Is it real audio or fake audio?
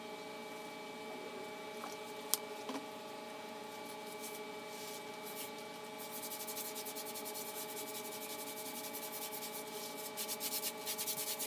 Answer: real